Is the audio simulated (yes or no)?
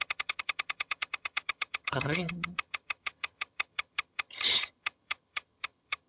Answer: yes